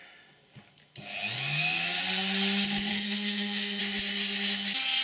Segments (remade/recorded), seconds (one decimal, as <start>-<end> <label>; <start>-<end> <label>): 0.0-2.9 recorded; 2.9-3.8 remade; 3.8-5.0 recorded